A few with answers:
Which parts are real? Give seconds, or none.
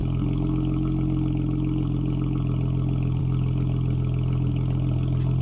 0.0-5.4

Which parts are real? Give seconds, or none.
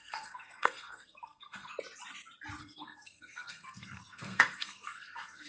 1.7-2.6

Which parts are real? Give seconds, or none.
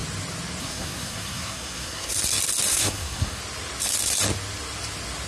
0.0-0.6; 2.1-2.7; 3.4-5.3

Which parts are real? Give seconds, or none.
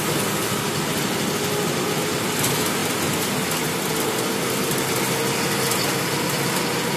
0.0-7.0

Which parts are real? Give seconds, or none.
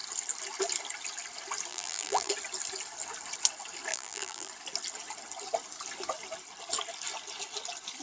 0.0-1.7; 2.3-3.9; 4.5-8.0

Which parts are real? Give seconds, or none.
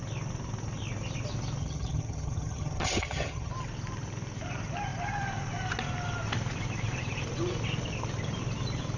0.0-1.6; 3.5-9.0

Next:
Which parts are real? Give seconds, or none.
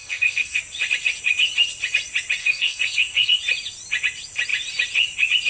0.6-2.4; 3.4-5.5